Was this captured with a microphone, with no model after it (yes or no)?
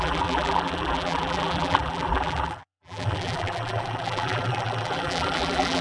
no